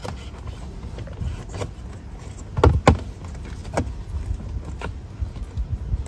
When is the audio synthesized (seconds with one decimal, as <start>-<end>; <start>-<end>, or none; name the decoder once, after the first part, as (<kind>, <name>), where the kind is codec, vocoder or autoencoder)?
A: none